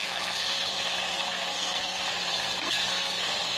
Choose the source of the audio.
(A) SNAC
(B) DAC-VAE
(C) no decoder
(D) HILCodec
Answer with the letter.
A